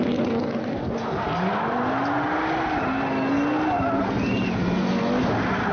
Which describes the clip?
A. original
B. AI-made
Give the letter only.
A